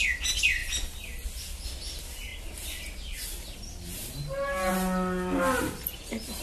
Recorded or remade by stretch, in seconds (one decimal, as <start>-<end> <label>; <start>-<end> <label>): 0.0-6.4 recorded